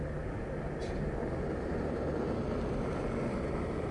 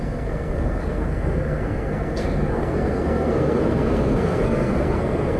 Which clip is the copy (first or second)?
second